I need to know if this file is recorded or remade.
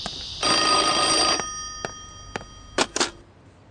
recorded